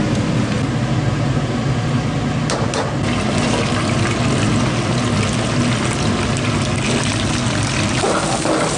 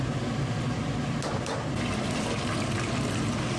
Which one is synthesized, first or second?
second